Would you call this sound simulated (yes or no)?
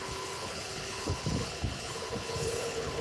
yes